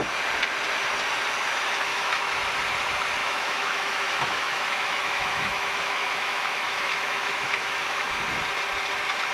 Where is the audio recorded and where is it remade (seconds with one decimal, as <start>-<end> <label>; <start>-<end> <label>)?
0.0-1.9 recorded; 1.9-2.4 remade; 2.4-3.2 recorded; 3.2-8.2 remade; 8.2-9.3 recorded